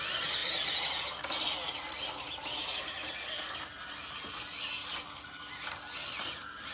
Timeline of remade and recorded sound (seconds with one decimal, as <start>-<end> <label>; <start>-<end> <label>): 0.0-6.7 recorded